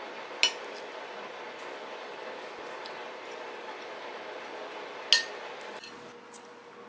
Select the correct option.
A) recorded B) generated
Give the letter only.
A